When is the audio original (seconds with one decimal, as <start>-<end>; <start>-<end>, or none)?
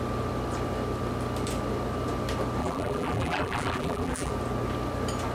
0.0-2.6; 4.3-5.3